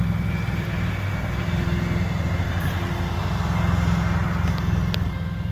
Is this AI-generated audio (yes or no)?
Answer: no